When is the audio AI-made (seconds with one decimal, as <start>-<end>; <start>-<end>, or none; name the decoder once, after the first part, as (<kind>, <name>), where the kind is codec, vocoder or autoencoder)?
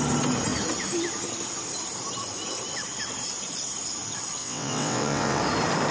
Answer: 4.4-5.4 (vocoder, WaveNeXt)